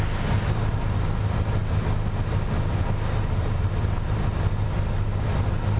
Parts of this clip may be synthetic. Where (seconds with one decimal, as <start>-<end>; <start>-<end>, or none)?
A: none